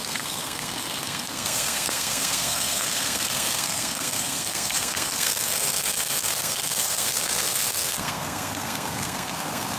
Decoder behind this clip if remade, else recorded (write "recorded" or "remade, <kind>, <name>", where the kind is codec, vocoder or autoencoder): remade, codec, SNAC